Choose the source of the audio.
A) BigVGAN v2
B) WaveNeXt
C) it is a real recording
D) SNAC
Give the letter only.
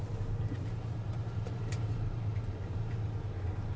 A